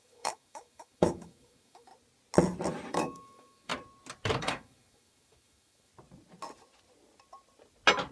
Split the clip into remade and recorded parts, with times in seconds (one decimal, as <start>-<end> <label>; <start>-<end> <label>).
0.0-1.9 remade; 1.9-2.9 recorded; 2.9-3.7 remade; 3.7-4.4 recorded; 4.4-5.9 remade; 5.9-8.1 recorded